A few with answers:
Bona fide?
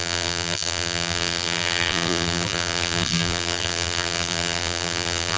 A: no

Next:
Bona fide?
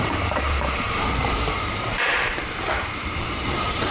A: no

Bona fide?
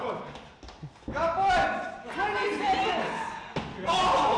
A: yes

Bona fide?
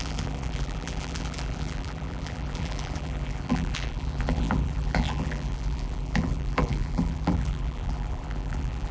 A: no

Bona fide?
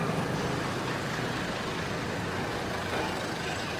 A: yes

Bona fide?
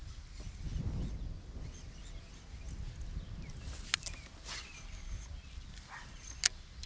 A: yes